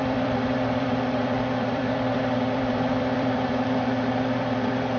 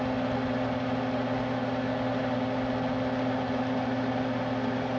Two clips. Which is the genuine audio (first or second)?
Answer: second